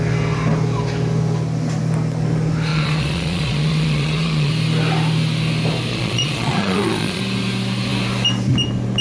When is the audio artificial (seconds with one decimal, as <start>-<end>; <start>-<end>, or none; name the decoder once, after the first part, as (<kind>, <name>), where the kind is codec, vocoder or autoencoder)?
2.7-4.5 (vocoder, Vocos); 5.9-7.2